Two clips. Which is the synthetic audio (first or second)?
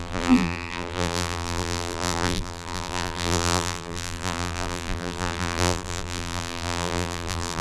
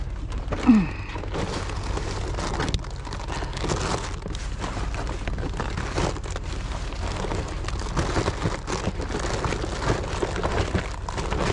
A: first